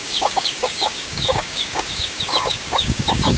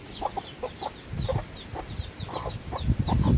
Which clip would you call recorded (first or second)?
second